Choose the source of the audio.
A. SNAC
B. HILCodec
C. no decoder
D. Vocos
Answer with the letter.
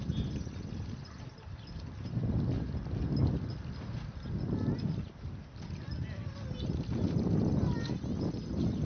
C